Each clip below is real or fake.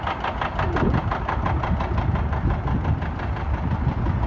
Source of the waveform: real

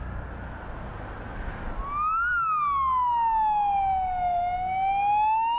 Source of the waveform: real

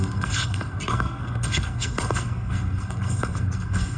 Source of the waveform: fake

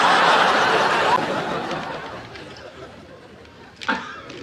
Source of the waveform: real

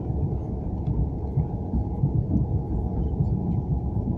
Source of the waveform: real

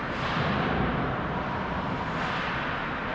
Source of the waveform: real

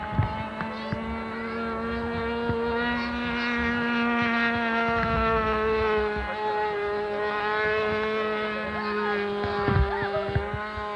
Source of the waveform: real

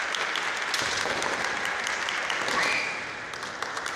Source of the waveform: real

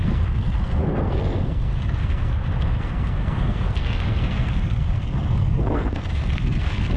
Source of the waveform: fake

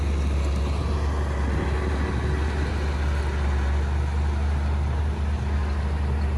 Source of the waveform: real